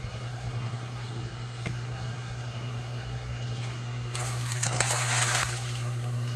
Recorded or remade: remade